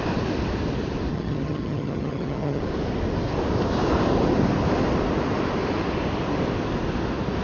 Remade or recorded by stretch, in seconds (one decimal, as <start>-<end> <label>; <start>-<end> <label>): 0.0-1.1 recorded; 1.1-2.6 remade; 2.6-7.4 recorded